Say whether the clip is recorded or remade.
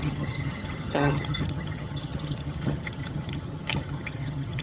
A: remade